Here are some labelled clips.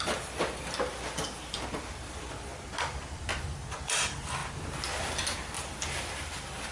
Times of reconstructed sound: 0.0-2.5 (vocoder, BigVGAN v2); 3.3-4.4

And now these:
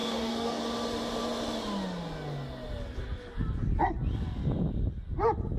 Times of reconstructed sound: 0.0-0.6 (codec, DAC)

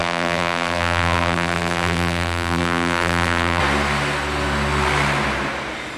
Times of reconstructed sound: 0.0-3.6 (vocoder, BigVGAN v2)

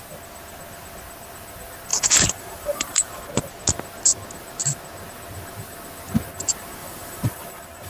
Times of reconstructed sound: 1.9-3.2 (vocoder, BigVGAN v2); 6.8-7.9

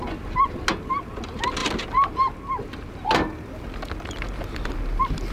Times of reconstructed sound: none